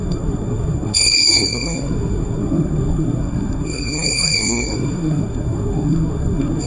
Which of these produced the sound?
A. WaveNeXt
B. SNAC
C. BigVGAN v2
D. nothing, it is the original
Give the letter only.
B